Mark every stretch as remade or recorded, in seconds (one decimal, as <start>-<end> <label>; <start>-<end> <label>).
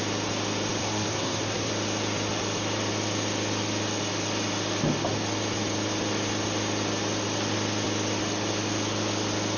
0.0-0.8 recorded; 0.8-1.7 remade; 1.7-9.6 recorded